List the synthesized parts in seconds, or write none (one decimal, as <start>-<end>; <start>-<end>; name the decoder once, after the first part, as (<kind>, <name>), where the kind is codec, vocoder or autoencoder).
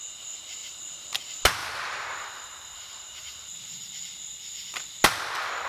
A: 0.6-1.2 (vocoder, BigVGAN v2); 1.6-5.0